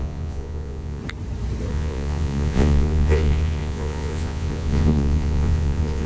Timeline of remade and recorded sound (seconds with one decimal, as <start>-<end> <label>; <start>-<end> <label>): 0.0-1.0 remade; 1.0-1.7 recorded; 1.7-6.1 remade